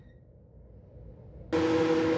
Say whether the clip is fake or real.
real